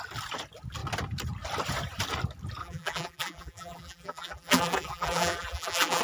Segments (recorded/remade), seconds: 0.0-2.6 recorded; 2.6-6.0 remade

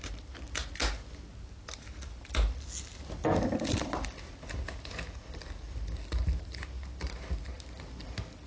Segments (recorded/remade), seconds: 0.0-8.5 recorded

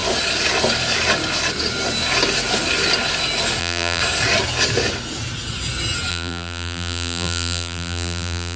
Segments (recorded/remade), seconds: 0.0-3.6 recorded; 3.6-4.0 remade; 4.0-6.1 recorded; 6.1-8.6 remade

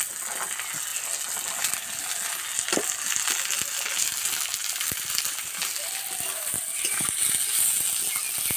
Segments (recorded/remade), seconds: 0.0-4.6 recorded; 4.6-7.3 remade; 7.3-8.6 recorded

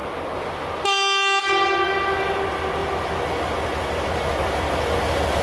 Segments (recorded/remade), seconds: 0.0-5.4 recorded

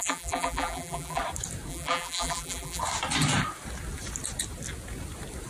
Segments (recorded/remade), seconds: 0.0-1.2 remade; 1.2-1.7 recorded; 1.7-2.8 remade; 2.8-5.5 recorded